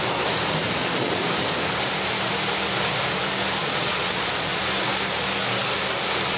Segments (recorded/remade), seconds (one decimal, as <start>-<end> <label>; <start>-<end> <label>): 0.0-0.8 recorded; 0.8-1.3 remade; 1.3-3.6 recorded; 3.6-4.6 remade; 4.6-6.4 recorded